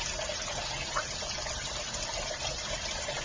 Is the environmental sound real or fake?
real